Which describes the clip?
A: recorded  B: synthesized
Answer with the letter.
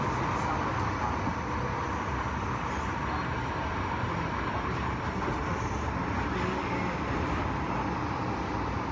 A